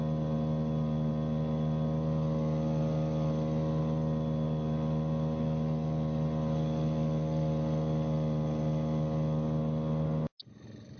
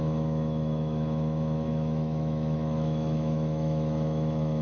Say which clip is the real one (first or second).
first